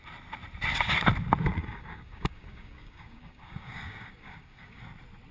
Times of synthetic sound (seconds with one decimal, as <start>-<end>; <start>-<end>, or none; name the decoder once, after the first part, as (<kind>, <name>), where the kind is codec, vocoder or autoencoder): 1.6-4.8 (codec, DAC)